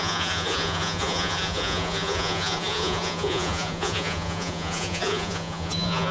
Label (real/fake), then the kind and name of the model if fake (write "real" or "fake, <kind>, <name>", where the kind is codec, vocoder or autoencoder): fake, vocoder, Vocos